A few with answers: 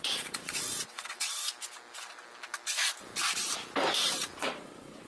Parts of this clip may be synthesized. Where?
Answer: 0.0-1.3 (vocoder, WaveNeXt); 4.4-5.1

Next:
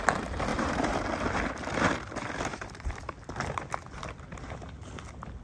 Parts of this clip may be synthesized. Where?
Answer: 0.5-1.0 (vocoder, BigVGAN v2); 2.5-3.0

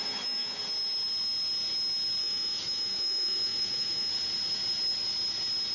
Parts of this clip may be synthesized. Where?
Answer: 0.0-0.6 (autoencoder, DAC-VAE); 2.2-4.1

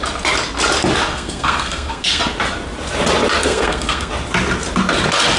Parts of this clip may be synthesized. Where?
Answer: 1.1-2.2 (codec, SNAC); 3.4-4.1

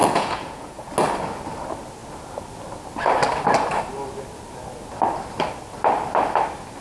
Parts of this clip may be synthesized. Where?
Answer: 0.0-0.9 (vocoder, Vocos)

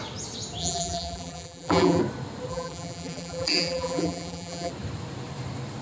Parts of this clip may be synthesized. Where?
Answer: 0.6-2.0 (vocoder, BigVGAN v2); 2.5-4.7

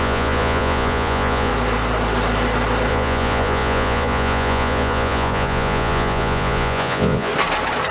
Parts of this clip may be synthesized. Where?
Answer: 0.0-1.5 (vocoder, Vocos); 2.9-7.3